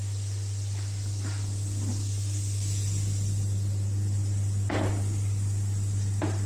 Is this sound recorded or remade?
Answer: recorded